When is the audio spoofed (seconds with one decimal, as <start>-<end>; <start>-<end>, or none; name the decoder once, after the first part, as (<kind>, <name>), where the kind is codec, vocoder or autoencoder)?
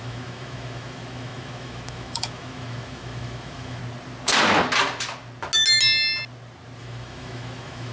0.0-3.8 (autoencoder, DAC-VAE); 6.8-7.9